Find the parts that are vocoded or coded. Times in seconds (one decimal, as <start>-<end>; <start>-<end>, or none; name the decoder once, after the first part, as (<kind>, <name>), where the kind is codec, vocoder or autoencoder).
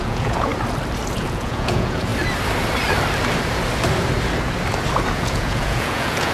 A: 0.0-0.5 (vocoder, Vocos); 1.1-2.1; 5.1-6.3